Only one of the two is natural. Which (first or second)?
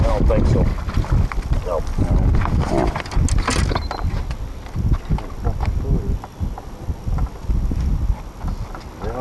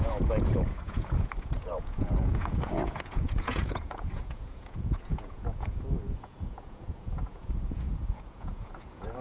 first